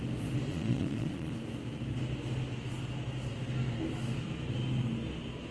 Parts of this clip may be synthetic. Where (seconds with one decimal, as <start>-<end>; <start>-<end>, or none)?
0.5-1.3